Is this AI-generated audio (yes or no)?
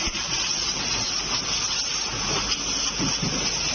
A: no